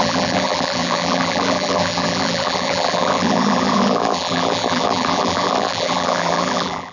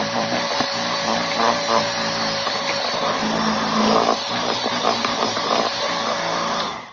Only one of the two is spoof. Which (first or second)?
first